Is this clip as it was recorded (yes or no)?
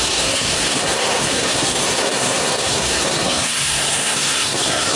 no